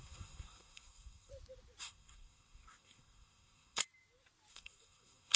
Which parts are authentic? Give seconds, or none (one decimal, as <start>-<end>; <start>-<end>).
1.3-1.8; 3.8-4.5